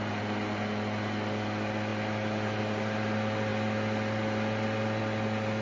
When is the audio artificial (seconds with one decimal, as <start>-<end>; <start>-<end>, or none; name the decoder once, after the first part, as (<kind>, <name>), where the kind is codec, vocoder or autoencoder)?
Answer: none